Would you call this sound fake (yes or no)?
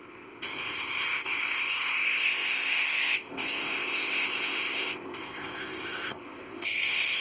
yes